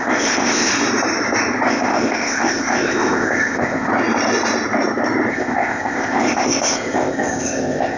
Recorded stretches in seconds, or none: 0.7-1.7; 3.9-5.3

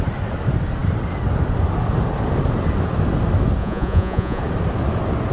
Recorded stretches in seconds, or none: 0.0-3.6; 4.4-5.3

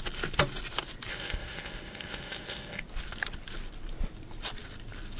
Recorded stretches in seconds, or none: 0.0-1.1; 2.8-5.2

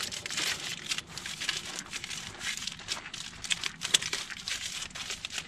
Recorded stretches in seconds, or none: 0.0-5.5

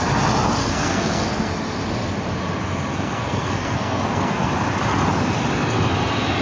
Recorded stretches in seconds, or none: 0.0-0.6; 1.5-2.9; 4.5-6.4

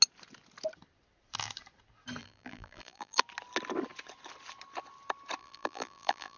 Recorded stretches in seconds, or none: 0.0-2.2; 3.2-5.4

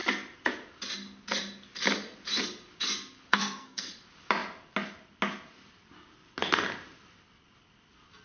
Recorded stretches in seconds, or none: 0.0-3.3; 3.9-8.2

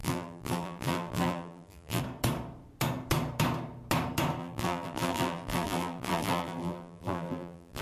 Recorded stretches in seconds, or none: 2.0-4.4